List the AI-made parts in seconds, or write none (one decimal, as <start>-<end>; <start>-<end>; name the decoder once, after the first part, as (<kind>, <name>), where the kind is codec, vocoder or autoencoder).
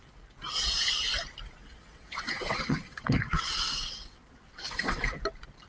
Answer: 1.6-5.0 (vocoder, WaveNeXt)